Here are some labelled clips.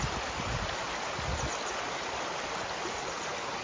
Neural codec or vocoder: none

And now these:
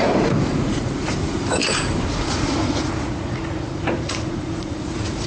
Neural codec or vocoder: vocoder, Vocos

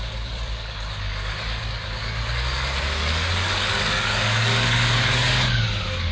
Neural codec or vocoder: codec, DAC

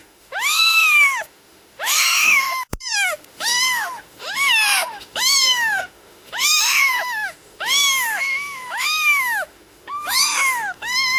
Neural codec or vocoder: autoencoder, DAC-VAE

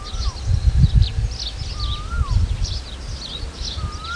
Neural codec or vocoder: none